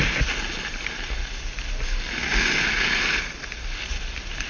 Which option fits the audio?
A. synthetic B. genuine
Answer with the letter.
B